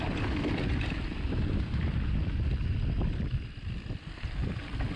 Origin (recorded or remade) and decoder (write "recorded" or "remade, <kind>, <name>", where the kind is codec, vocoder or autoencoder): recorded